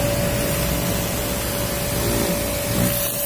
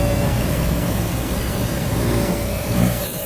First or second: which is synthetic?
second